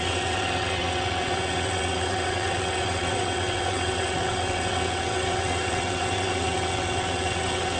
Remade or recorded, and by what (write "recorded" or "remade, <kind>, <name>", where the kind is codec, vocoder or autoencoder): remade, vocoder, WaveNeXt